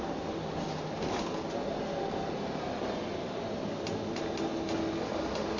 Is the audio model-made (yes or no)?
no